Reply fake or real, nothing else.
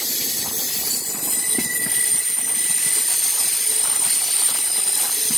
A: real